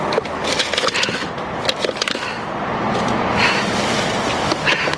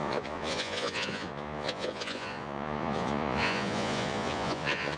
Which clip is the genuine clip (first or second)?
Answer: first